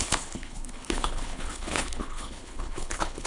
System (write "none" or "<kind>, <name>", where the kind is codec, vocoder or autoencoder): codec, HILCodec